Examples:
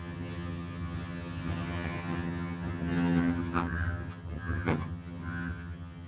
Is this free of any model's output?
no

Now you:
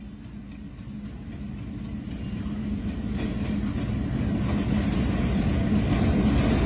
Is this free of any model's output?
yes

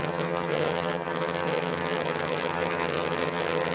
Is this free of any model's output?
no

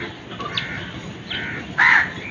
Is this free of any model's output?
yes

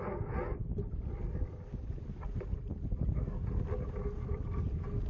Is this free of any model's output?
yes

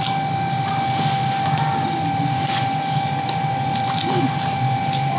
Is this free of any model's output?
yes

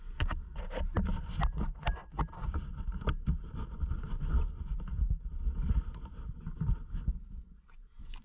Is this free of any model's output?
yes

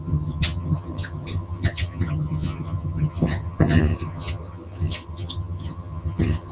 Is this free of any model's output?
no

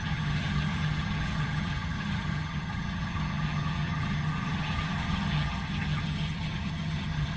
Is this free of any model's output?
no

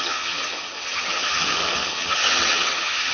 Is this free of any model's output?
no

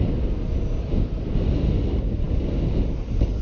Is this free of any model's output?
yes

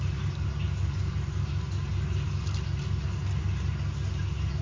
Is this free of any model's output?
yes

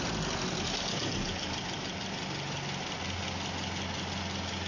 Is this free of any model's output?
yes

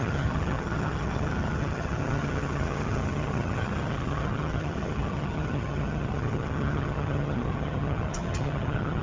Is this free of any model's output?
no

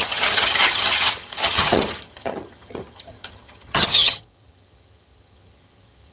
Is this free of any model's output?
no